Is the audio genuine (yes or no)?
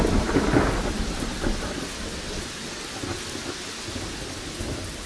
yes